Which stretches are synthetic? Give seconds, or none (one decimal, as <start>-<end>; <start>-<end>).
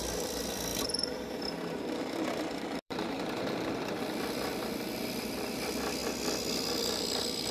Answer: 0.0-6.0; 6.8-7.5